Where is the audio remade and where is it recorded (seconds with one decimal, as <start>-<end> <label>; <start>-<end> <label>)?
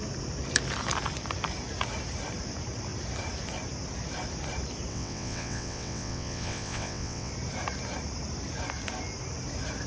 0.0-4.9 recorded; 4.9-7.3 remade; 7.3-9.9 recorded